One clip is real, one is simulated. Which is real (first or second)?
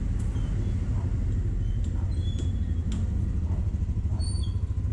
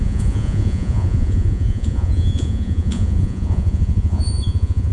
first